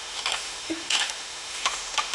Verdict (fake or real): fake